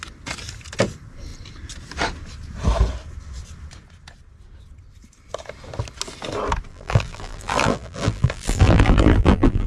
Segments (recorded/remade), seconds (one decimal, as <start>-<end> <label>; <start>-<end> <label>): 0.0-6.7 recorded; 6.7-9.7 remade